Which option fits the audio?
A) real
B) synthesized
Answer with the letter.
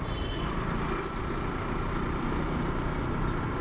A